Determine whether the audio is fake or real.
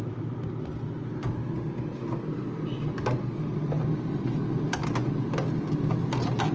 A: real